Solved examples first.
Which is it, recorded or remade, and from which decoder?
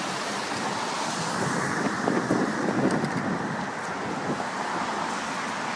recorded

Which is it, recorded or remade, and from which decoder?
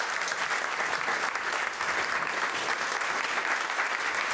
recorded